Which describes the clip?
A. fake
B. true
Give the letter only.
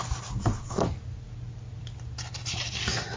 B